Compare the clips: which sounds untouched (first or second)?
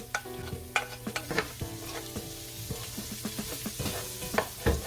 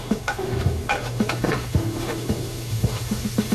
first